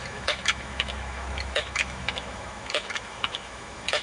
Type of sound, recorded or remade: remade